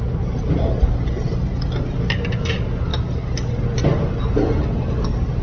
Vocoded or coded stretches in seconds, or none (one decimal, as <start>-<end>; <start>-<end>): none